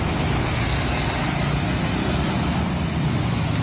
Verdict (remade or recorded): recorded